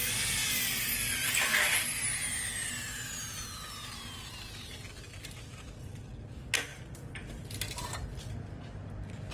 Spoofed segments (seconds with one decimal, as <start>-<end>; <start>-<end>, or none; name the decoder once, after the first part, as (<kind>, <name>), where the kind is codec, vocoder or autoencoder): 6.7-7.3 (vocoder, BigVGAN v2)